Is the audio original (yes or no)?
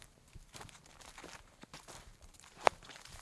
no